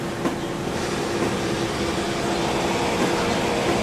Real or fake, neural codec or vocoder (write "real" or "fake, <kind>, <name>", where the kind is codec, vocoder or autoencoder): real